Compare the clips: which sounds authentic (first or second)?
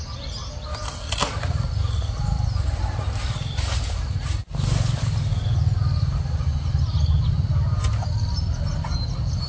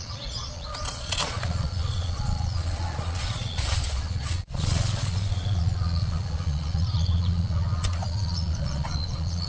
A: first